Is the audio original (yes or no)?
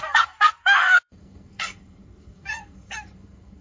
no